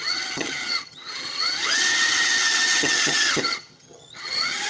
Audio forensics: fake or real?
fake